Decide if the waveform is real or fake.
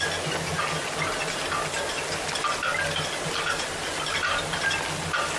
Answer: real